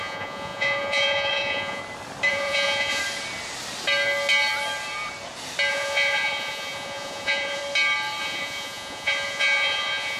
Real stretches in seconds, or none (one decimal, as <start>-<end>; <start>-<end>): 1.8-2.3; 3.0-5.7; 7.6-8.2

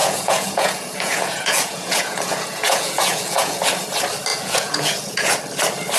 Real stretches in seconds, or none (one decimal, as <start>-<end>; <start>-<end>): 3.6-4.3; 5.4-6.0

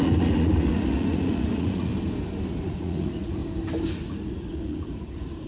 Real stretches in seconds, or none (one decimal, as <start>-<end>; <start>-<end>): 1.9-2.5; 3.4-3.9